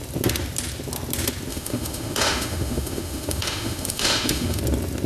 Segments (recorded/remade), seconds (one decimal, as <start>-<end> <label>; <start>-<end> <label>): 0.0-1.5 recorded; 1.5-4.6 remade; 4.6-5.1 recorded